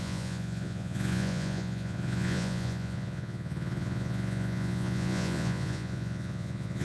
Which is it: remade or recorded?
remade